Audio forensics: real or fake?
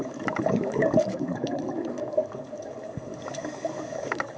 fake